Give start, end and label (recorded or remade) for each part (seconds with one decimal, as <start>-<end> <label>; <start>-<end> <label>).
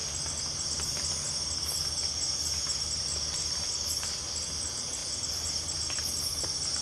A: 0.0-6.8 recorded